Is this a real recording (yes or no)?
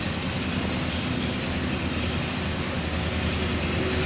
yes